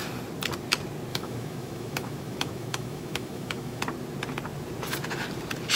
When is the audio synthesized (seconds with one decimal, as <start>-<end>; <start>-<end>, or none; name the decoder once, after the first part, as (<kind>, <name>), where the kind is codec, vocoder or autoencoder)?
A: 1.1-3.8 (autoencoder, DAC-VAE)